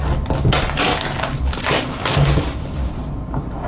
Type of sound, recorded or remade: recorded